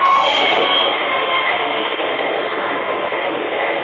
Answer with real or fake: fake